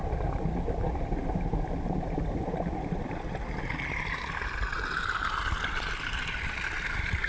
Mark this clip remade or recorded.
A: recorded